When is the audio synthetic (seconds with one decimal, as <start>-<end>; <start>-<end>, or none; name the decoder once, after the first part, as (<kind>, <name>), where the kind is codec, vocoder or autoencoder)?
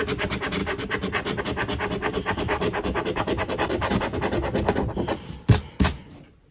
0.6-1.4 (vocoder, BigVGAN v2); 2.1-3.9